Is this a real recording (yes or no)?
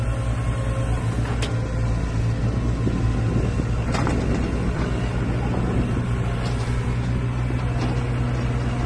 yes